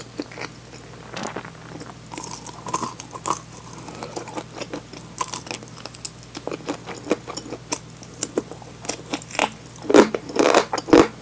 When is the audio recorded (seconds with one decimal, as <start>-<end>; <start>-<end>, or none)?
0.0-11.2